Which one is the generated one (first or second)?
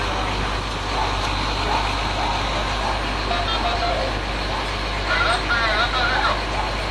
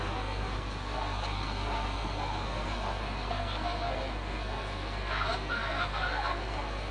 second